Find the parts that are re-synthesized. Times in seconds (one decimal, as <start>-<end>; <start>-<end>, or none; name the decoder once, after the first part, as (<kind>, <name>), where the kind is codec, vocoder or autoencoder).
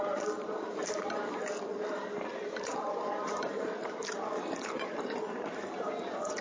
0.0-6.4 (vocoder, BigVGAN v2)